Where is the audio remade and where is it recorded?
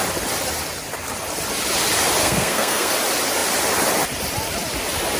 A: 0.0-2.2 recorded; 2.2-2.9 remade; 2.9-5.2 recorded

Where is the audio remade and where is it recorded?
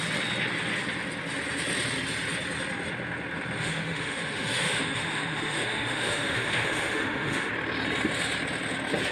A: 0.0-3.6 recorded; 3.6-7.5 remade; 7.5-9.1 recorded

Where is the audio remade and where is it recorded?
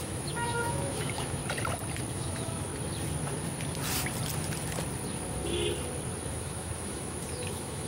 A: 0.0-1.4 remade; 1.4-2.1 recorded; 2.1-2.7 remade; 2.7-6.3 recorded; 6.3-7.9 remade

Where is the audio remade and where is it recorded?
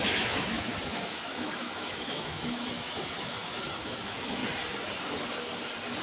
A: 0.0-4.4 remade; 4.4-6.0 recorded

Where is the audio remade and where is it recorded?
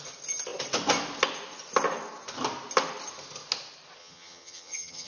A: 0.0-4.0 recorded; 4.0-5.1 remade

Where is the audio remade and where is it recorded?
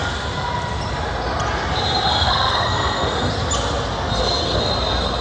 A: 0.0-2.1 recorded; 2.1-3.3 remade; 3.3-4.2 recorded; 4.2-4.7 remade; 4.7-5.2 recorded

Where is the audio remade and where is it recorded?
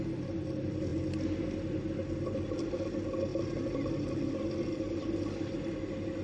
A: 0.0-6.2 recorded